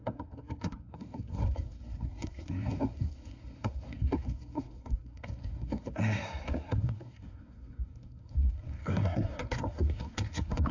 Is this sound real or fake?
fake